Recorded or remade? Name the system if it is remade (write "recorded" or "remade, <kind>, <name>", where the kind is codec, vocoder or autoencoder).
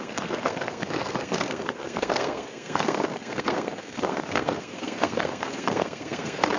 remade, codec, SNAC